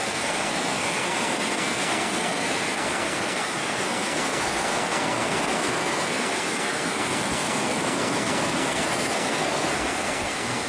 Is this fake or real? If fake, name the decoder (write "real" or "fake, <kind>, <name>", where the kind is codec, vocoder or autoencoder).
fake, codec, SNAC